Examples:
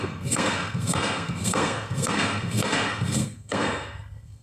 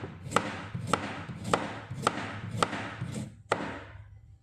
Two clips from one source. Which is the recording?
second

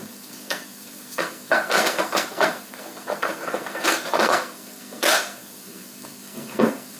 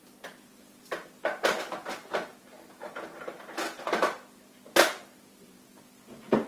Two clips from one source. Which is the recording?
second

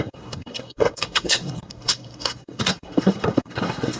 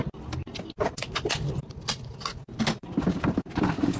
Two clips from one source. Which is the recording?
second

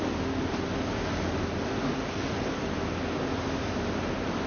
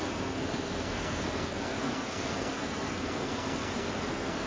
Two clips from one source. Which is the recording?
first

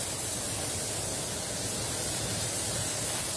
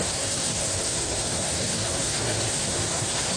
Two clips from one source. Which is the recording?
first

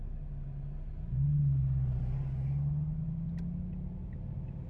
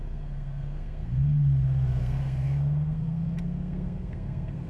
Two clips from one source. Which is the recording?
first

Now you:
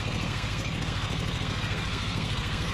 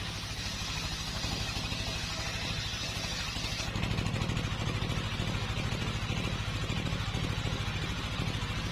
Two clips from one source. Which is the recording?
second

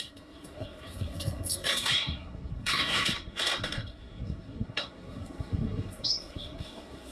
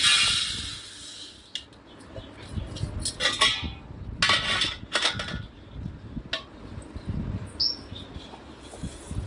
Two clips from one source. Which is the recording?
second